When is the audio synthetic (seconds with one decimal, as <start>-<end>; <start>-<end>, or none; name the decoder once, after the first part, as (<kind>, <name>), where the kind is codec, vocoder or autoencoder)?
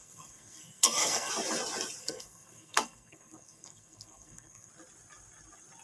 0.0-1.3 (codec, SNAC); 2.0-4.7